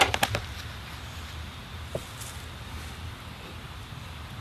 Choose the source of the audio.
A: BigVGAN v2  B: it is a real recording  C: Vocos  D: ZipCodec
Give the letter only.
B